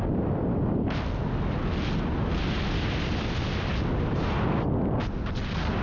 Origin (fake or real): real